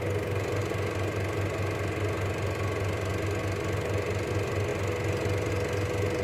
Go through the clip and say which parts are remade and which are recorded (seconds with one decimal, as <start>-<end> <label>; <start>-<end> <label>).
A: 0.0-6.2 recorded